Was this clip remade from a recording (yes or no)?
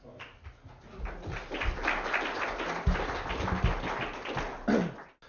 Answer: no